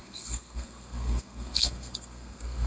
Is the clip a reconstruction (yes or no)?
yes